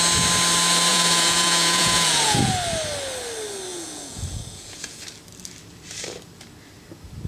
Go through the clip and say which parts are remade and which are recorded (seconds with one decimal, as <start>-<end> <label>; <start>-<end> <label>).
0.0-0.9 recorded; 0.9-2.5 remade; 2.5-3.7 recorded; 3.7-5.0 remade; 5.0-7.3 recorded